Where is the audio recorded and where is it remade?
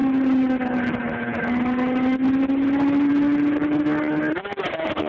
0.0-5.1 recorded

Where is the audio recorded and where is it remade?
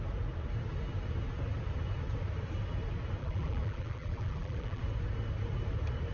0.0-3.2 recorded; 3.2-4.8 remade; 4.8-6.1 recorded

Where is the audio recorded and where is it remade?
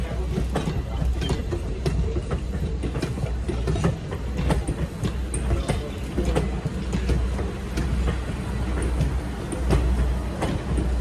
0.0-1.4 recorded; 1.4-2.7 remade; 2.7-11.0 recorded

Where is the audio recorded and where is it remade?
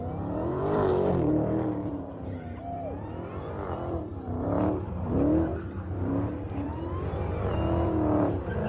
0.0-8.7 remade